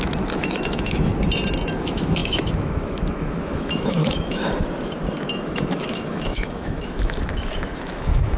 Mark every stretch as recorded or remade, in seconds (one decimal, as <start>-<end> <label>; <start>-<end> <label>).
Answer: 0.0-1.1 remade; 1.1-1.8 recorded; 1.8-4.4 remade; 4.4-5.3 recorded; 5.3-8.4 remade